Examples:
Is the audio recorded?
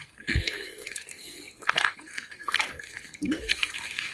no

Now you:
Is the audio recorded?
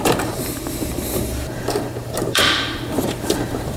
no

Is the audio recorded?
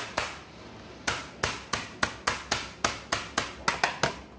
yes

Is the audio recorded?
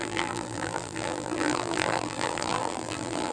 no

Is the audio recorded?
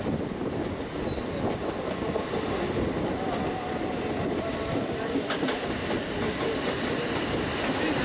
yes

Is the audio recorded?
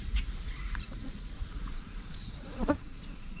no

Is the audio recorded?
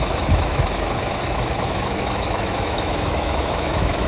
no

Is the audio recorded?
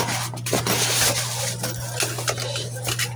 yes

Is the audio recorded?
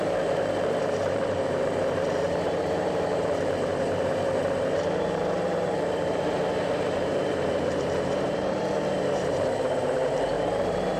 no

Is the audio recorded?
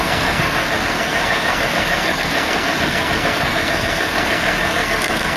no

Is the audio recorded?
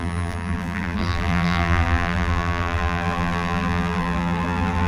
no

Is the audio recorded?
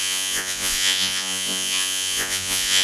no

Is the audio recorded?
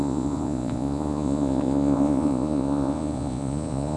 no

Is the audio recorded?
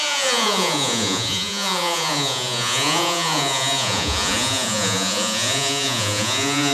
no